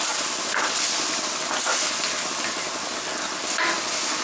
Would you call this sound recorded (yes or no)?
yes